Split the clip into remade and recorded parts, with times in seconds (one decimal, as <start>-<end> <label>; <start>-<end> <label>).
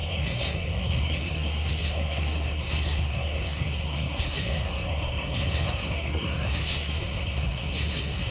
0.0-8.3 remade